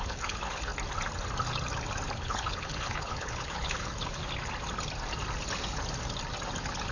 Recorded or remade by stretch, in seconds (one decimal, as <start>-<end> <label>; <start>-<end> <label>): 0.0-0.7 remade; 0.7-2.1 recorded; 2.1-4.2 remade; 4.2-6.9 recorded